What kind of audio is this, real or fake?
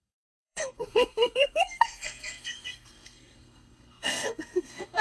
fake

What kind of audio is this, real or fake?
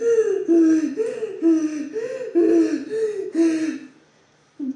real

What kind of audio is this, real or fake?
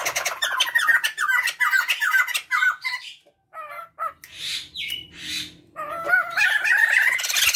real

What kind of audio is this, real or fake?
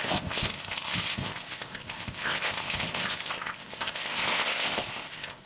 fake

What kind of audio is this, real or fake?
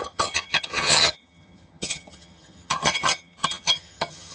fake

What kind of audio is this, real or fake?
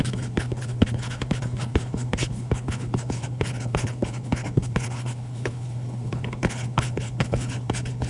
fake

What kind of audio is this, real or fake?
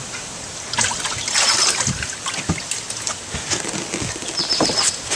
real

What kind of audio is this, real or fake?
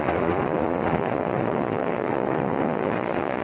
fake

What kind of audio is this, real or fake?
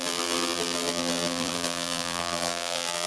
fake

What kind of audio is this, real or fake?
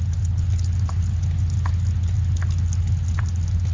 real